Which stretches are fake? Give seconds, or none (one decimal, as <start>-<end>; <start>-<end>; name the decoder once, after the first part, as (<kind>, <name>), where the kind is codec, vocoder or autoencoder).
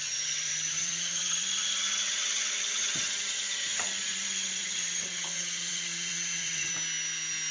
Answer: 0.0-6.7 (vocoder, HiFi-GAN)